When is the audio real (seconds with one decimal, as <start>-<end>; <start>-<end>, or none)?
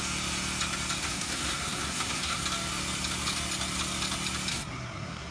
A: 0.0-1.0; 2.4-4.5